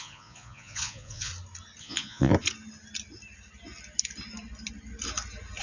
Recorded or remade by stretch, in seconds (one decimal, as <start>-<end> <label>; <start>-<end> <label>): 0.0-1.3 remade; 1.3-1.8 recorded; 1.8-2.3 remade; 2.3-5.6 recorded